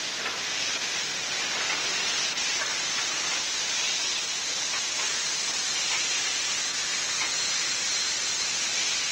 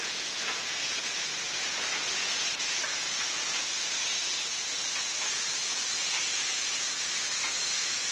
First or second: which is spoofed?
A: second